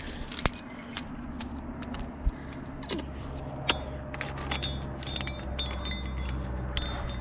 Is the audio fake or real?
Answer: real